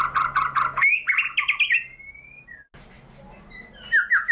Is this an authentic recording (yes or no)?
yes